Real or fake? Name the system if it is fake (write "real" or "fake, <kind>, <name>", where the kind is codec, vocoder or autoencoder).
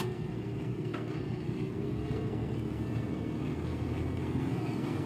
fake, codec, SNAC